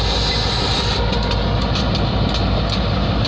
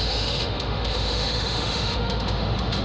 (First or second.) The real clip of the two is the first